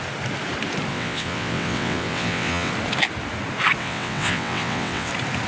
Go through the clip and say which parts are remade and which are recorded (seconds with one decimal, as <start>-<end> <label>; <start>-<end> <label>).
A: 0.0-0.9 recorded; 0.9-2.7 remade; 2.7-3.8 recorded; 3.8-5.1 remade; 5.1-5.5 recorded